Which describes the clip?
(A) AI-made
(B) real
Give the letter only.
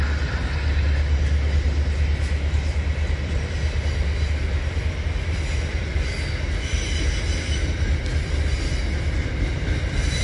B